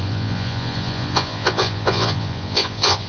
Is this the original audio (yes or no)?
no